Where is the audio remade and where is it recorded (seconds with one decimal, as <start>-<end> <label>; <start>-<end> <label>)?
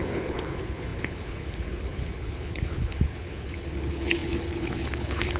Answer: 0.0-5.4 remade